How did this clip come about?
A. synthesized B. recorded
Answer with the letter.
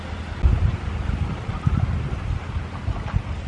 B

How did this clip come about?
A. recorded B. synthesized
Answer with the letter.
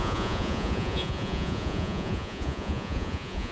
B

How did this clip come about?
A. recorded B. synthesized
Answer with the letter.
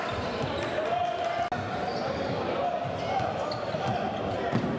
A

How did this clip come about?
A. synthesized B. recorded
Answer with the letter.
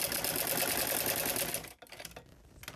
B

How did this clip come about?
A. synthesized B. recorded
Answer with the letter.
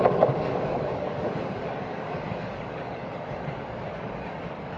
A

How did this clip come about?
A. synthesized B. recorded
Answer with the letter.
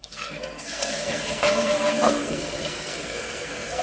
A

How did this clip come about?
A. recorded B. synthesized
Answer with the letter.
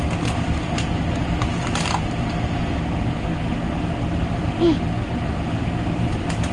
A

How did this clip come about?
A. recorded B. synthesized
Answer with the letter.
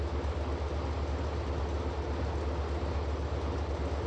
A